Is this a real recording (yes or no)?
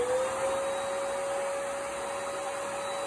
yes